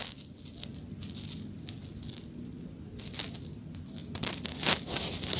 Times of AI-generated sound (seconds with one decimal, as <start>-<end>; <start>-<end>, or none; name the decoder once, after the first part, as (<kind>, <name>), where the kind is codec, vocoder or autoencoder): 0.7-3.2 (vocoder, BigVGAN v2); 4.0-4.7